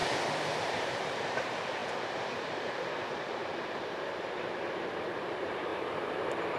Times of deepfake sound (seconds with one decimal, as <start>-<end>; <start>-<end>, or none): 0.6-5.7